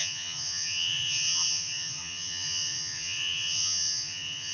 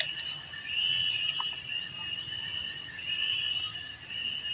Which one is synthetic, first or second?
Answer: first